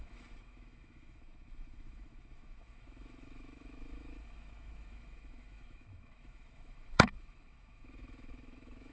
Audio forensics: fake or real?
fake